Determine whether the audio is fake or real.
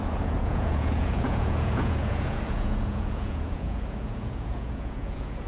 fake